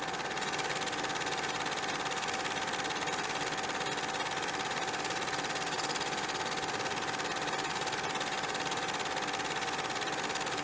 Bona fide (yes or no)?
yes